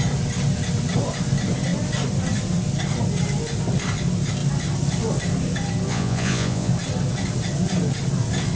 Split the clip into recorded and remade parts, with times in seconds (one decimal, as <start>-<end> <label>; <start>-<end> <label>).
0.0-5.9 recorded; 5.9-6.7 remade; 6.7-8.6 recorded